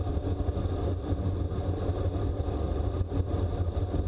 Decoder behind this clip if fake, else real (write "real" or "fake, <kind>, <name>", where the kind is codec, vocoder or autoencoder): real